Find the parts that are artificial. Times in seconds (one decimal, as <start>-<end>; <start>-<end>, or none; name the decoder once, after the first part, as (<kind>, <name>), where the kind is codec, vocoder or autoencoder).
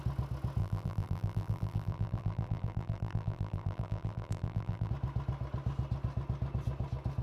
0.6-4.9 (vocoder, BigVGAN v2)